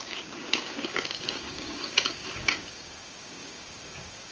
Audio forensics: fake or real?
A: fake